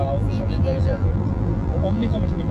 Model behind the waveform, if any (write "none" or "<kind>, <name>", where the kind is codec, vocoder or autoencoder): vocoder, BigVGAN v2